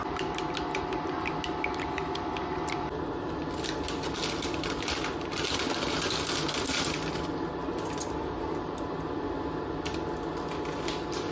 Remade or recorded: recorded